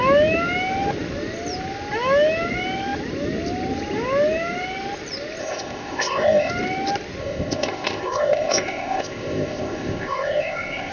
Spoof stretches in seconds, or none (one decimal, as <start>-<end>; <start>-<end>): 5.4-6.5; 7.2-10.9